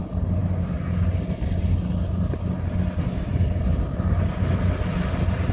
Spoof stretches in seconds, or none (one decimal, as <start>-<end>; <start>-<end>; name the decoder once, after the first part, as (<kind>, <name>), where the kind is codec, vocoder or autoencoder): none